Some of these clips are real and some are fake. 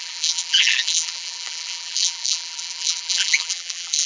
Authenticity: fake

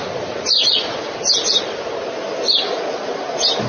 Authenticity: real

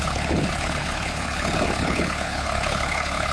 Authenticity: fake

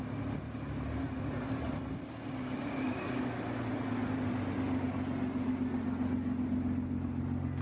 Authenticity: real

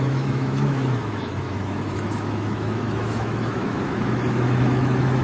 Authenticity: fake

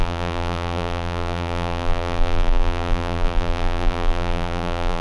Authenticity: fake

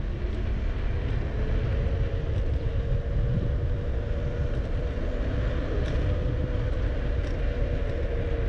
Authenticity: real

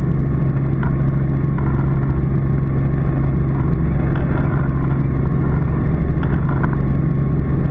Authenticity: real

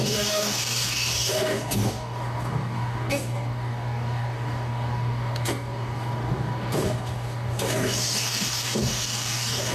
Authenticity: fake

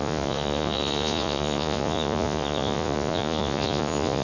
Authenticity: fake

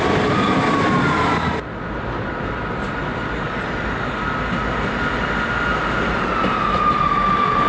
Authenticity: real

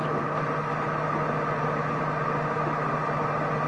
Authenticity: real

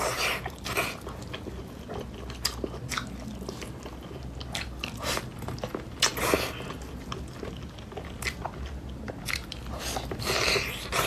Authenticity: real